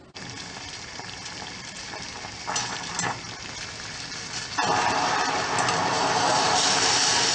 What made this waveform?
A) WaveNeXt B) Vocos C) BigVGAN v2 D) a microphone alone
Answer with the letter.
D